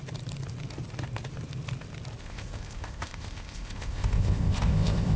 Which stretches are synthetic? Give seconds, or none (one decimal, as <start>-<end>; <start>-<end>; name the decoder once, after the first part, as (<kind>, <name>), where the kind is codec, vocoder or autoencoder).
2.2-5.2 (codec, ZipCodec)